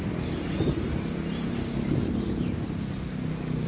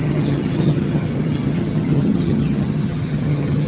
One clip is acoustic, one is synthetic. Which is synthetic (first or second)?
second